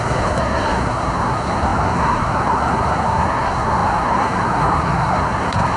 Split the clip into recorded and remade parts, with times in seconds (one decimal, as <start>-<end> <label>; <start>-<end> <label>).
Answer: 0.0-5.8 remade